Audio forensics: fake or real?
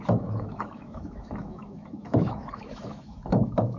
fake